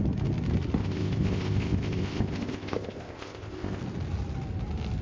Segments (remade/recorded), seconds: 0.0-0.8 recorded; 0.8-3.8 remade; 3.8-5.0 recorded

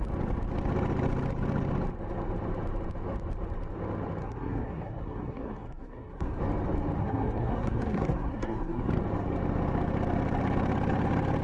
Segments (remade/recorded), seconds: 0.0-4.2 recorded; 4.2-6.4 remade; 6.4-7.0 recorded; 7.0-8.9 remade; 8.9-11.4 recorded

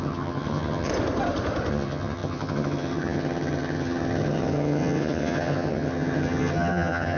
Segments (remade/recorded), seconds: 0.0-0.9 remade; 0.9-1.7 recorded; 1.7-7.2 remade

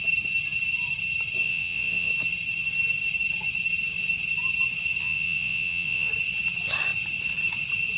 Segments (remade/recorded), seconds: 0.0-1.4 recorded; 1.4-2.1 remade; 2.1-5.0 recorded; 5.0-6.1 remade; 6.1-8.0 recorded

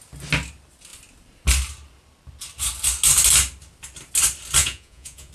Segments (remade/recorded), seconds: 0.0-4.6 recorded; 4.6-5.3 remade

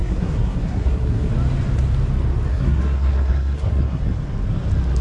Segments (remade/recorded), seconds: 0.0-1.3 remade; 1.3-2.5 recorded; 2.5-4.0 remade; 4.0-5.0 recorded

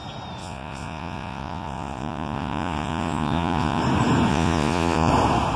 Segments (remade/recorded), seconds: 0.0-0.4 recorded; 0.4-3.8 remade; 3.8-4.3 recorded; 4.3-5.1 remade; 5.1-5.6 recorded

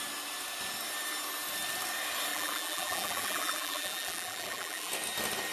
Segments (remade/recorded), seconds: 0.0-2.3 recorded; 2.3-4.9 remade; 4.9-5.5 recorded